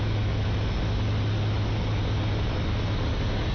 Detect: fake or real real